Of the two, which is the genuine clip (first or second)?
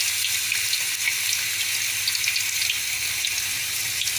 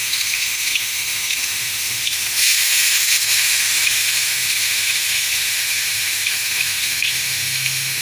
first